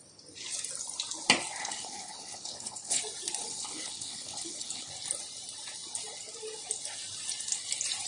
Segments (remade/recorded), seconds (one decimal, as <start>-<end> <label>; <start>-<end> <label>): 0.0-1.6 recorded; 1.6-3.0 remade; 3.0-3.4 recorded; 3.4-4.9 remade; 4.9-8.1 recorded